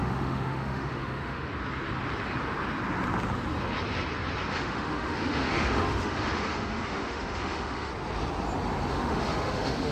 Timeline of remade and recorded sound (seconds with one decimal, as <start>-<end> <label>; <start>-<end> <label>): 0.0-1.5 remade; 1.5-4.5 recorded; 4.5-7.9 remade; 7.9-8.9 recorded; 8.9-9.9 remade